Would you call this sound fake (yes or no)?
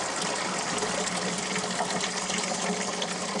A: no